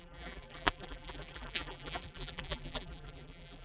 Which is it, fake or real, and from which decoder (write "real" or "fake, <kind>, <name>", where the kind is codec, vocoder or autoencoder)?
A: fake, vocoder, BigVGAN v2